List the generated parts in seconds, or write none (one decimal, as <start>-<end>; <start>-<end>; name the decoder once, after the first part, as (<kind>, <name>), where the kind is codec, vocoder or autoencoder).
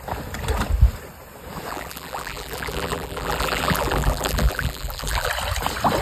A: 1.7-5.3 (vocoder, BigVGAN v2)